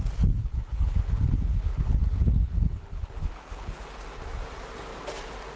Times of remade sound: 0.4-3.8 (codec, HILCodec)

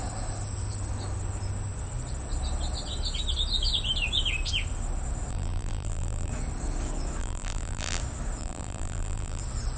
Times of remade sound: 5.3-6.3 (vocoder, BigVGAN v2); 7.2-8.0; 8.4-9.4